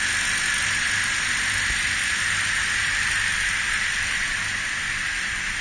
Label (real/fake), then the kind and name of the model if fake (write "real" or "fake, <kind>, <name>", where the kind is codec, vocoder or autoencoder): real